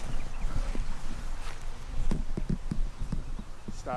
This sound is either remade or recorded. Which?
recorded